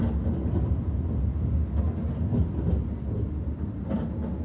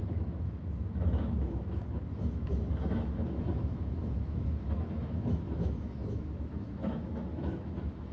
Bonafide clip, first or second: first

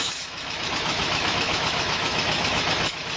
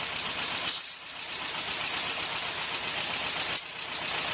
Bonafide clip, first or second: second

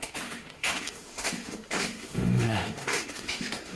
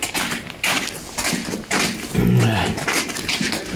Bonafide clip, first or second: second